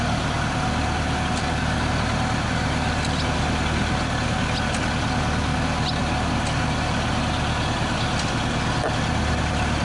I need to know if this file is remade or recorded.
recorded